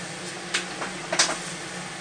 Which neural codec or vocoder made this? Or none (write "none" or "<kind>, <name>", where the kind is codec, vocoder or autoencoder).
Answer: none